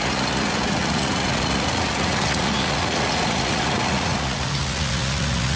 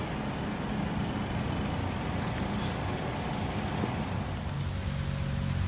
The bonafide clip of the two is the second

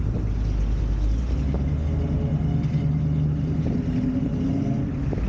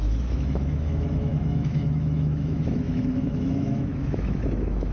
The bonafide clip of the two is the first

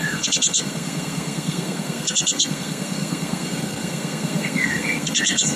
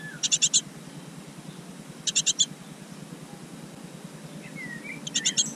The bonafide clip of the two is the second